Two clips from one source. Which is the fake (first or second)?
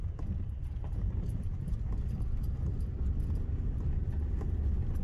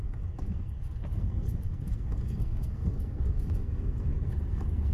second